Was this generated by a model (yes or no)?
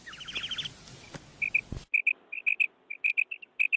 no